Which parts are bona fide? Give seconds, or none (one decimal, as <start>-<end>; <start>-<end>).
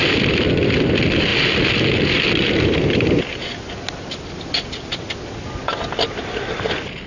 0.0-7.1